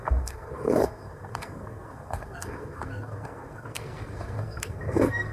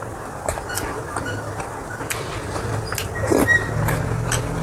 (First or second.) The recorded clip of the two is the second